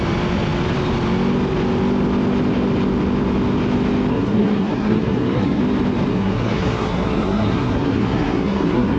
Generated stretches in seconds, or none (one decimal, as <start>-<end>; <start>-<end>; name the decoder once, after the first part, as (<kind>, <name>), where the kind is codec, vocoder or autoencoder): 4.1-5.6 (codec, SNAC); 6.1-9.0